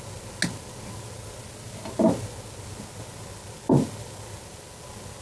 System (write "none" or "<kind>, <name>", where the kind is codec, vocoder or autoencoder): none